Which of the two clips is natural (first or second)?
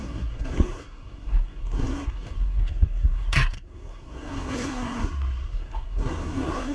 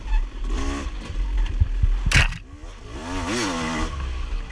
second